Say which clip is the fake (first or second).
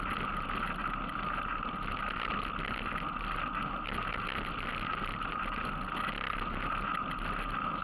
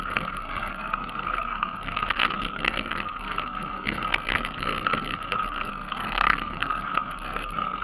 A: second